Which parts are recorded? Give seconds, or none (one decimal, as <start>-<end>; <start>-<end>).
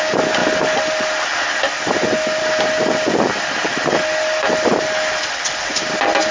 0.0-6.3